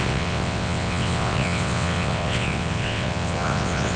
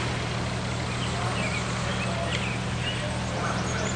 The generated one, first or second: first